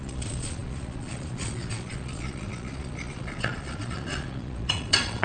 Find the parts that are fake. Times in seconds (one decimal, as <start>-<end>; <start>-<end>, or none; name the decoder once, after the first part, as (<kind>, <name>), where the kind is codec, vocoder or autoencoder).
0.0-5.2 (vocoder, Vocos)